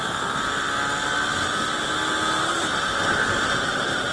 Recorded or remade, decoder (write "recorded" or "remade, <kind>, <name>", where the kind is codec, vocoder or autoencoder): recorded